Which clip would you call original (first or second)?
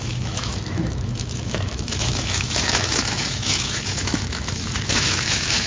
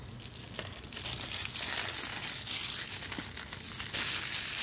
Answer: second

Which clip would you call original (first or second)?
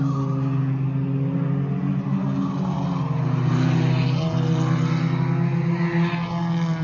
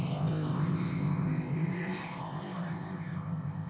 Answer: first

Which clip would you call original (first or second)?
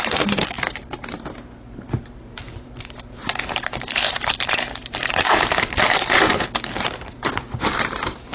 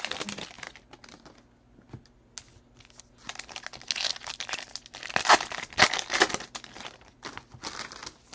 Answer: second